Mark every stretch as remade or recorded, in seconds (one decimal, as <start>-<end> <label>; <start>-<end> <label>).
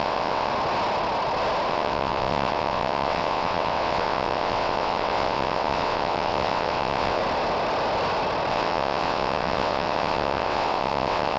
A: 0.0-0.5 remade; 0.5-1.7 recorded; 1.7-7.2 remade; 7.2-8.5 recorded; 8.5-11.4 remade